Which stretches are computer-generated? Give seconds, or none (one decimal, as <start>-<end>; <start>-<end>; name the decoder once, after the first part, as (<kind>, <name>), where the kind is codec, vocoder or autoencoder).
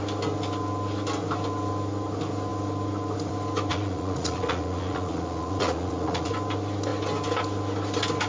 3.7-6.3 (vocoder, Vocos)